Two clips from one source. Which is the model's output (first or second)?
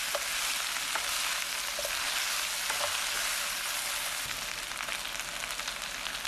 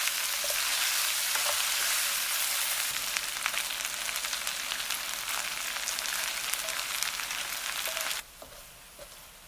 second